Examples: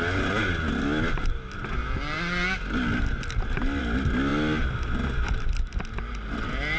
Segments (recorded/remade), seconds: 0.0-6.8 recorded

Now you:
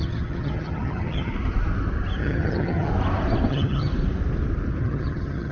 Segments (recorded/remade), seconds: 0.0-1.3 remade; 1.3-2.2 recorded; 2.2-2.9 remade; 2.9-3.5 recorded; 3.5-3.9 remade; 3.9-4.8 recorded; 4.8-5.5 remade

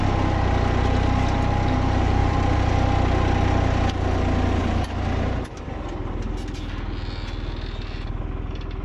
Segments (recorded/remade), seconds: 0.0-2.2 recorded; 2.2-2.7 remade; 2.7-4.6 recorded; 4.6-5.6 remade; 5.6-8.8 recorded